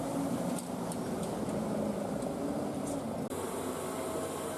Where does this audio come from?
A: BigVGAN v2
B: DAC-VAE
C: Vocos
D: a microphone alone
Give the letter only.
D